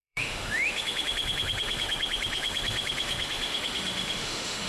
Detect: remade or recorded remade